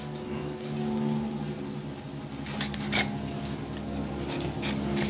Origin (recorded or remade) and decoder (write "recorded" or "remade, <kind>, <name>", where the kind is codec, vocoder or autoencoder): recorded